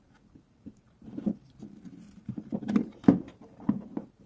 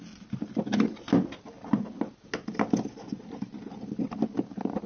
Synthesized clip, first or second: first